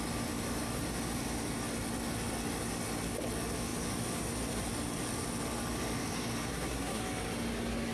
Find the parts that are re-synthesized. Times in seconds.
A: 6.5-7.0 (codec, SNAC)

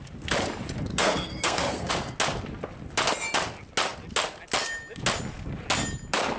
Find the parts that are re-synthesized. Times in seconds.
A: 0.9-1.9 (codec, SNAC)

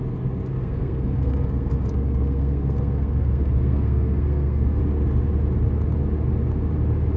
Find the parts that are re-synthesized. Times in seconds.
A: 0.5-4.8 (codec, SNAC)

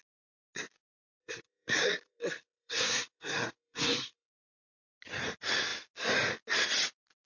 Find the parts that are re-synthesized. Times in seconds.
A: 1.2-4.6 (codec, SNAC)